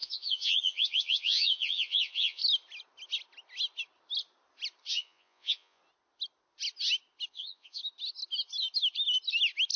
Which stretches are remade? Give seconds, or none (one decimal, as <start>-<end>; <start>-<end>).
0.0-2.4; 4.9-5.8; 7.3-7.8

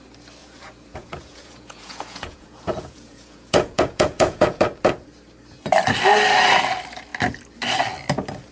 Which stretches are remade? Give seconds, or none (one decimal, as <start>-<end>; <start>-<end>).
0.4-4.6

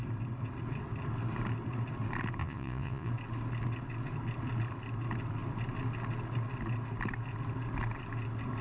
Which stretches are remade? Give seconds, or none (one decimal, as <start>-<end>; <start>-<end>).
2.4-3.1

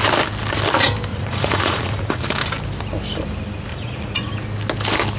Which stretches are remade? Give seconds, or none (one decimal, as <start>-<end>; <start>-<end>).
1.1-2.2; 3.7-4.3